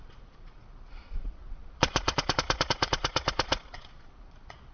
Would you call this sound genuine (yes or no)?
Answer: no